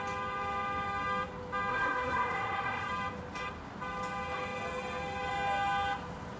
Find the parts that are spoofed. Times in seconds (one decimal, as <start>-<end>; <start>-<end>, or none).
1.7-2.9